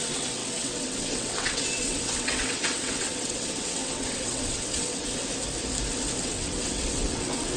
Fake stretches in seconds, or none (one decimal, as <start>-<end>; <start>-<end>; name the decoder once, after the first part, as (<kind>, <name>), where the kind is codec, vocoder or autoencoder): 0.0-5.2 (vocoder, WaveNeXt); 6.2-7.6